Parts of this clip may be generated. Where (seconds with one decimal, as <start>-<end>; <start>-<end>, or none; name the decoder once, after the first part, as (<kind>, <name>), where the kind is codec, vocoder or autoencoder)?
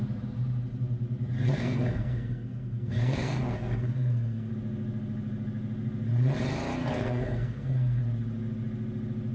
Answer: 1.5-4.5 (codec, SNAC); 6.8-8.0